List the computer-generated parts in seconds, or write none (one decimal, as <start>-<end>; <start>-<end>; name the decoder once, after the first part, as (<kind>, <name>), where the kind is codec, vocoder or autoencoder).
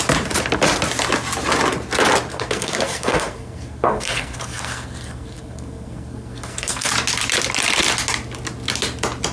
2.3-6.9 (codec, SNAC)